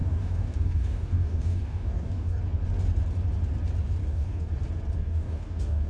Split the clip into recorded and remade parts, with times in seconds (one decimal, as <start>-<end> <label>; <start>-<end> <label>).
0.0-2.4 remade; 2.4-4.0 recorded; 4.0-4.5 remade; 4.5-5.0 recorded; 5.0-5.9 remade